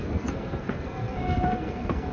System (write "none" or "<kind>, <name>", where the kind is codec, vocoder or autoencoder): codec, SNAC